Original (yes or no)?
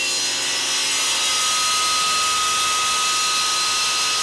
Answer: yes